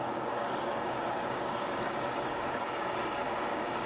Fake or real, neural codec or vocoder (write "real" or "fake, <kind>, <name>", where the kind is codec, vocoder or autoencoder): fake, codec, DAC